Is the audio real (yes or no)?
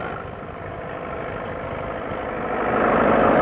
yes